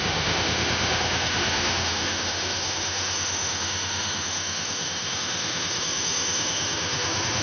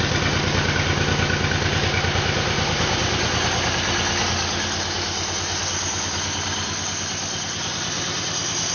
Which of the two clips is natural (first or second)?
second